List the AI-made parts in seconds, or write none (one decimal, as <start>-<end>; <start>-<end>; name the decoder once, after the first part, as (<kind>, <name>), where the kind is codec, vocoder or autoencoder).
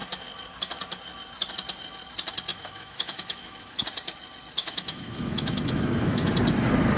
2.5-3.8 (autoencoder, DAC-VAE); 4.6-6.3